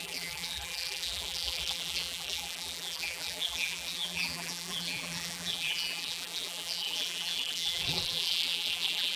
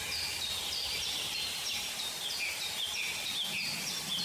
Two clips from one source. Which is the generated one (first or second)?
first